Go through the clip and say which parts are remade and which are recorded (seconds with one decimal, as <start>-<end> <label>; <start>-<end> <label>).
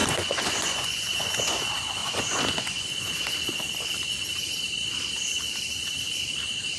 0.0-1.6 remade; 1.6-2.0 recorded; 2.0-3.1 remade; 3.1-6.8 recorded